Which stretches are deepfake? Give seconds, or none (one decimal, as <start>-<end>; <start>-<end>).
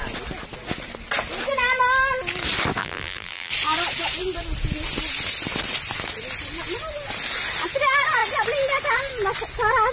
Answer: 2.8-3.5